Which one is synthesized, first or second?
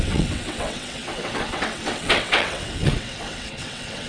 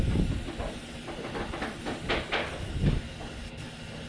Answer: first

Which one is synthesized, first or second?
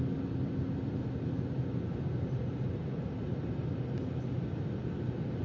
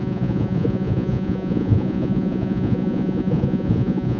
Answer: second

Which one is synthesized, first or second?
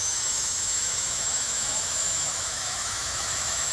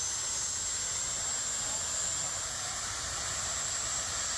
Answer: first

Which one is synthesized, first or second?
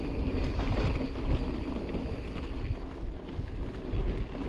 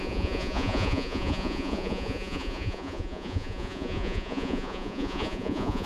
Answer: second